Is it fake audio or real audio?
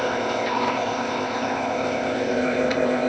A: fake